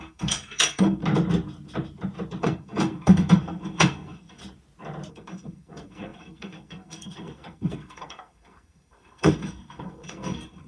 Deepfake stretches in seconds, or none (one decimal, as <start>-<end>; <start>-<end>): 0.0-1.0; 2.4-4.4; 5.1-10.7